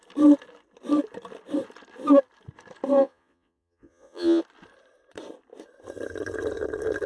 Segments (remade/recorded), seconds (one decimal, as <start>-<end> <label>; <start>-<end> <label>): 0.0-3.0 recorded; 3.0-4.4 remade; 4.4-7.1 recorded